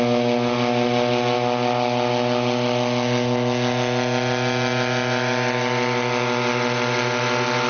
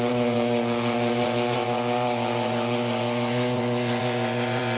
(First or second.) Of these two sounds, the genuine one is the first